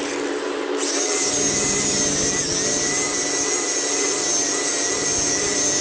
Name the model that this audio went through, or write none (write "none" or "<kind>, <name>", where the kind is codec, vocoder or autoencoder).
none